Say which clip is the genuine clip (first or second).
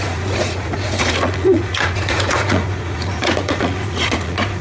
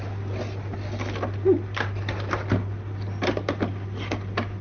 second